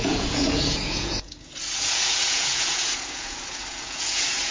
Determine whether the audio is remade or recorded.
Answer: remade